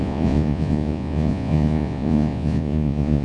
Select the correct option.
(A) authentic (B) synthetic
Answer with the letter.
B